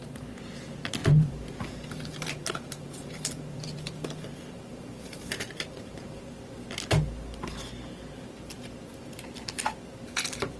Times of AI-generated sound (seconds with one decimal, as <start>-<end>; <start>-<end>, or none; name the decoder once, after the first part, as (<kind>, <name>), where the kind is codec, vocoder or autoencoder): 1.0-6.2 (vocoder, BigVGAN v2)